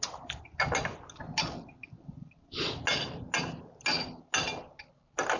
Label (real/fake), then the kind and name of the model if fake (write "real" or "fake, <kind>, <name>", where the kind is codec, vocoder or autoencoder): real